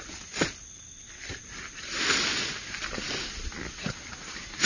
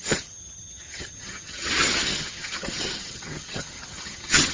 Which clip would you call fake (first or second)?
second